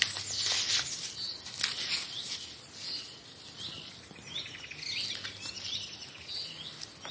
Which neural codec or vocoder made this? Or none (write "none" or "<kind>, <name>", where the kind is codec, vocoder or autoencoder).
none